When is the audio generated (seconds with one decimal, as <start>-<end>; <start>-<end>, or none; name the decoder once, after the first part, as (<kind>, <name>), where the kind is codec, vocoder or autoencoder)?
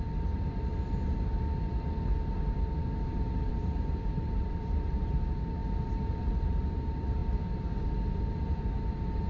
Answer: 0.0-0.7 (vocoder, BigVGAN v2); 3.5-5.6; 6.2-9.3